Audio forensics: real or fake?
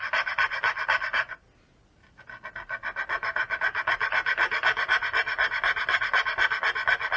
real